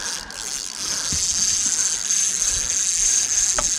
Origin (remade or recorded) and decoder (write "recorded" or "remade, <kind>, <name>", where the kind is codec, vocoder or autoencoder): recorded